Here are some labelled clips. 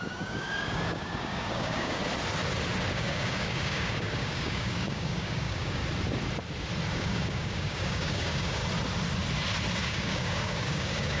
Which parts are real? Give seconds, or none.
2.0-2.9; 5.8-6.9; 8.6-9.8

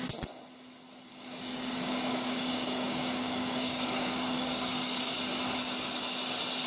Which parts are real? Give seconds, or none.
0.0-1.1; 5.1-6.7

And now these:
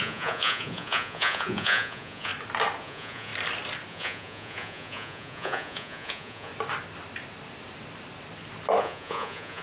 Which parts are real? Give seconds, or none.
2.3-2.8; 3.3-3.9; 6.5-8.8

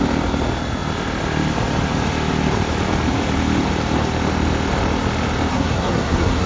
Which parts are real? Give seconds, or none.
0.0-5.5